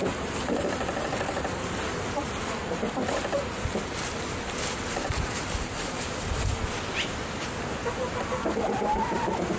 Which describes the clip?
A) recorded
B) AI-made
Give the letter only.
A